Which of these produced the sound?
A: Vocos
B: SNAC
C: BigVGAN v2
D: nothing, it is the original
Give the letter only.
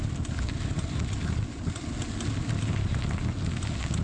D